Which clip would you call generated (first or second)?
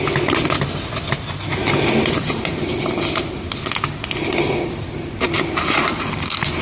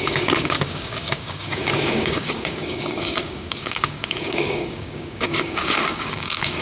second